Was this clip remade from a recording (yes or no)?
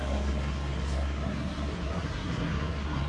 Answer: yes